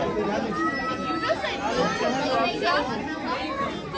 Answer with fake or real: real